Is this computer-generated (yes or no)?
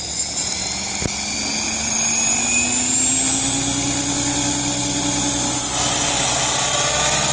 no